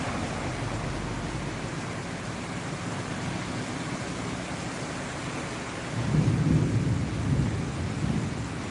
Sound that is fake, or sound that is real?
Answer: real